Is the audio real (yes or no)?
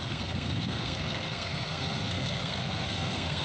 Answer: no